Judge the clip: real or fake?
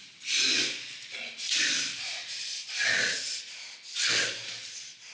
real